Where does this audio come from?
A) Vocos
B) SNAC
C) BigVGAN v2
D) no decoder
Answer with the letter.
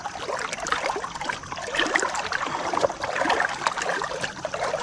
D